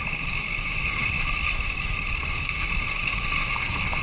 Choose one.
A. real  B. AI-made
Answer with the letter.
B